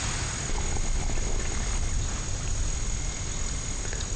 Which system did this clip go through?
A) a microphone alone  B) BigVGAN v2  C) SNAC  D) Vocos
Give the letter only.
A